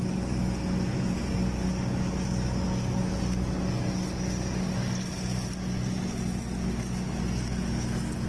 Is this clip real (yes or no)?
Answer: yes